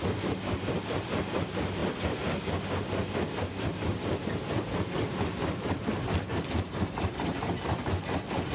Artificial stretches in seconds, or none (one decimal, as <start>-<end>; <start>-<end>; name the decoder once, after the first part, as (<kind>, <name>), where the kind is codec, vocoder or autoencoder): none